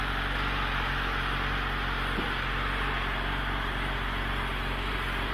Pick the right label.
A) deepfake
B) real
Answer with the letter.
B